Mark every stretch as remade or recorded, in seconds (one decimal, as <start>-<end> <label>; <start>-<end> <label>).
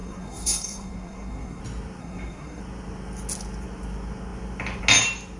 0.0-1.6 remade; 1.6-2.0 recorded; 2.0-2.6 remade; 2.6-5.4 recorded